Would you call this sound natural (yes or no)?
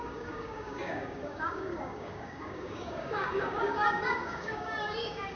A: no